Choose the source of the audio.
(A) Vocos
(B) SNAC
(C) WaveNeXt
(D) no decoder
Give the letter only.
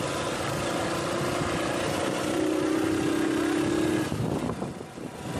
D